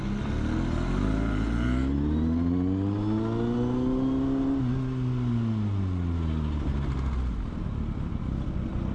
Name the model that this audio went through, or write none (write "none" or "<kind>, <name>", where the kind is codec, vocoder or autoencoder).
none